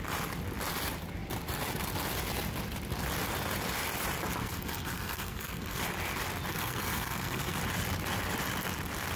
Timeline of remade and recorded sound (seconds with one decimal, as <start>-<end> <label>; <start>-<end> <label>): 0.0-4.4 recorded; 4.4-5.8 remade; 5.8-6.5 recorded; 6.5-7.6 remade; 7.6-9.2 recorded